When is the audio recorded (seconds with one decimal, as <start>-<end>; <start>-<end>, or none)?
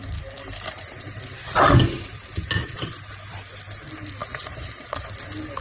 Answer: 0.0-4.2; 5.1-5.6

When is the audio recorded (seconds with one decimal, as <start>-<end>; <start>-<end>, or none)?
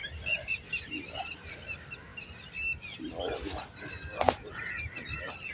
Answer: 0.0-5.5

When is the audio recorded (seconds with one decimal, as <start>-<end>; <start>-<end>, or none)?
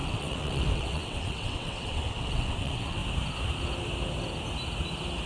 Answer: 3.0-5.3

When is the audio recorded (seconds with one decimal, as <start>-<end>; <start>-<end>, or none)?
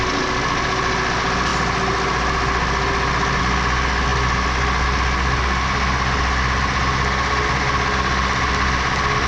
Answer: 0.0-9.3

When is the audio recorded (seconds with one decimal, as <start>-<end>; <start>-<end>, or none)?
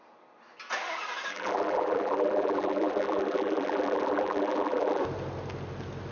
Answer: 0.0-1.3; 5.0-6.1